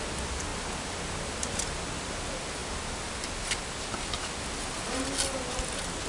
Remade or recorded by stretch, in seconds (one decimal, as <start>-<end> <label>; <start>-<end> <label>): 0.0-2.6 recorded; 2.6-3.3 remade; 3.3-6.1 recorded